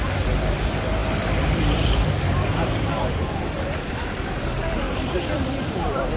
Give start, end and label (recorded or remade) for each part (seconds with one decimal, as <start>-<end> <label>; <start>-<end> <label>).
0.0-6.2 remade